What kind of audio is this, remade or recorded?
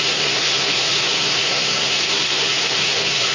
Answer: remade